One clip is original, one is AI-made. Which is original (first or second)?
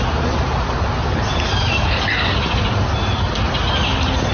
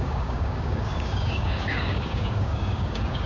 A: first